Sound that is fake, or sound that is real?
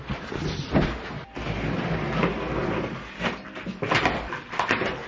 real